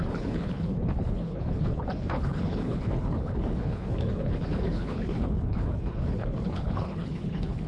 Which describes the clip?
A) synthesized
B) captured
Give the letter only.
A